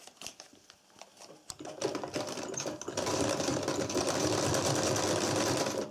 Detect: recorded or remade remade